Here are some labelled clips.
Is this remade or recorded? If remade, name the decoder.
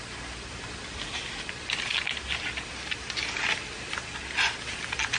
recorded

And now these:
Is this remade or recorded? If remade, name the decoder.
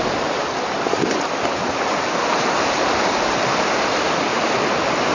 recorded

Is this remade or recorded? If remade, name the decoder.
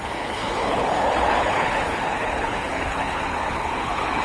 remade, codec, HILCodec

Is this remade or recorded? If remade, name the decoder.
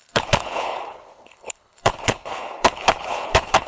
remade, codec, HILCodec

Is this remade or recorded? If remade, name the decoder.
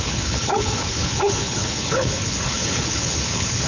remade, codec, HILCodec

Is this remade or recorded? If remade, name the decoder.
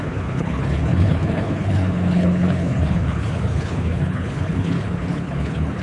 remade, codec, HILCodec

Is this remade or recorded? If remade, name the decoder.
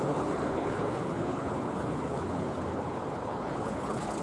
remade, codec, HILCodec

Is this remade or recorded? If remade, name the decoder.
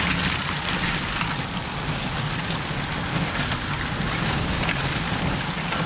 recorded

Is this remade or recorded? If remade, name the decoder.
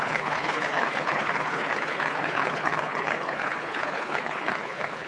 remade, codec, HILCodec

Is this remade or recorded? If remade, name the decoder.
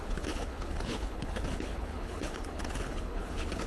remade, codec, HILCodec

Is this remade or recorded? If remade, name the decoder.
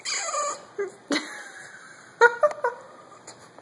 recorded